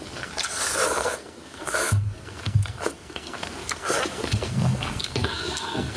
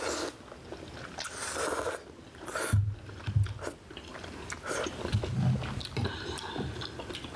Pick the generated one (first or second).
first